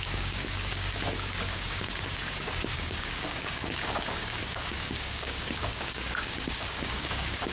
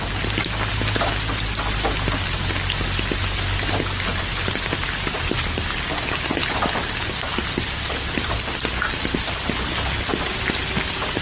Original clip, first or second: second